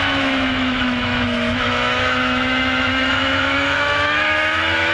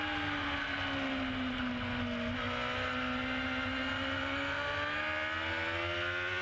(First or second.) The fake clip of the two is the first